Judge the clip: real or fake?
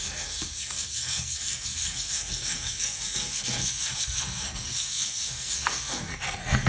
fake